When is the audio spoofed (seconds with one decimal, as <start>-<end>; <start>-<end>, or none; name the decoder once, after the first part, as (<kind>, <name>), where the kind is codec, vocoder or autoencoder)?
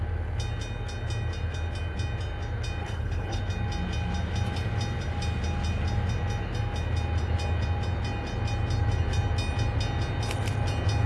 2.8-3.4 (codec, HILCodec)